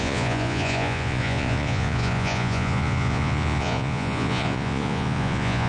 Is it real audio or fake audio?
fake